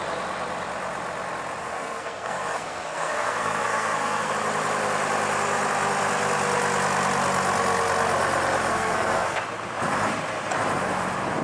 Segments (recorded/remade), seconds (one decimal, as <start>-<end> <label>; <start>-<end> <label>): 0.0-1.6 recorded; 1.6-4.3 remade; 4.3-8.7 recorded; 8.7-9.4 remade; 9.4-11.4 recorded